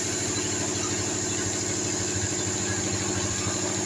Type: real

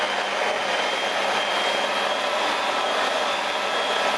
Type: real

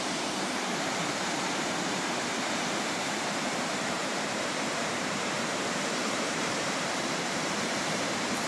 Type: fake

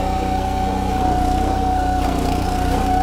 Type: fake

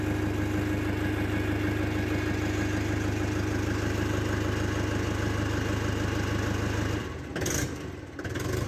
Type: real